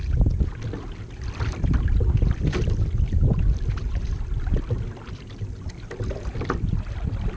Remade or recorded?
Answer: recorded